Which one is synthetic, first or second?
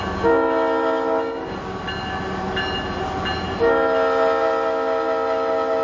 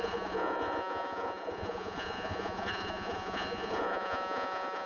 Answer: second